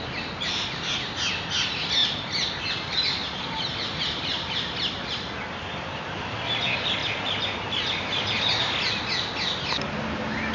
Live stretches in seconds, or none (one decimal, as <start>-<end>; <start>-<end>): 0.0-10.5

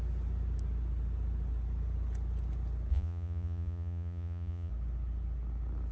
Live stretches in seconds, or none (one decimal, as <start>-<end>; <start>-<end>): 0.0-2.9; 4.7-5.9

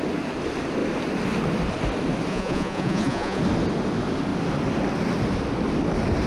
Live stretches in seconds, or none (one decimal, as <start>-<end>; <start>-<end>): 0.0-2.3; 3.4-6.3

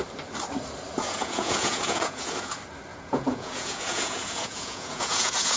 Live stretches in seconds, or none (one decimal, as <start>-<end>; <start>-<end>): 0.0-0.9; 2.5-2.9

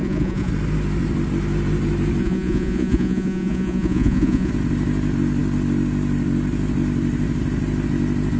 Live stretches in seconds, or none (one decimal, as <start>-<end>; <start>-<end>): 0.5-2.2; 4.5-8.4

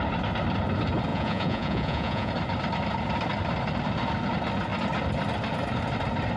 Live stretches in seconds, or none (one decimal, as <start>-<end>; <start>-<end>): 0.0-1.1; 2.3-6.4